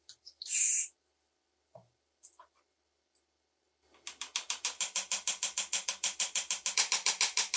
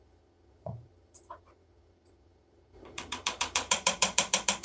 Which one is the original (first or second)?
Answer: first